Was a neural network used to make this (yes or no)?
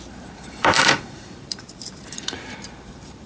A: yes